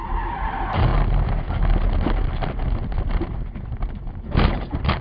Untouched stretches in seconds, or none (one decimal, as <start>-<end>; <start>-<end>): 0.9-3.0